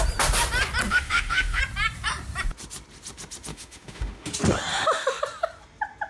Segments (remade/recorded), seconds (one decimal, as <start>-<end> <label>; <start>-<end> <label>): 0.0-0.9 recorded; 0.9-1.6 remade; 1.6-3.5 recorded; 3.5-4.3 remade; 4.3-4.7 recorded; 4.7-5.2 remade; 5.2-6.1 recorded